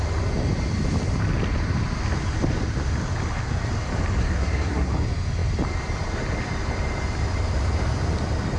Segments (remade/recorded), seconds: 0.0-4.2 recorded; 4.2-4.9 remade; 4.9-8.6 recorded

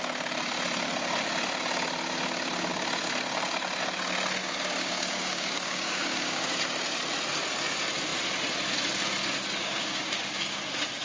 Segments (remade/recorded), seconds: 0.0-4.4 recorded; 4.4-6.5 remade; 6.5-9.2 recorded; 9.2-10.6 remade; 10.6-11.0 recorded